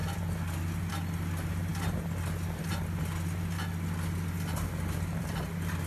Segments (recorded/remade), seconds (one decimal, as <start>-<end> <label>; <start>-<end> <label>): 0.0-5.9 recorded